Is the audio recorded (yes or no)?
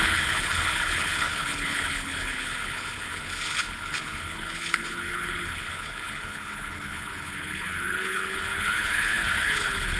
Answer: no